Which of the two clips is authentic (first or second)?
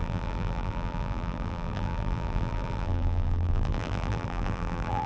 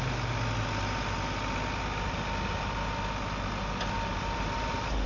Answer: second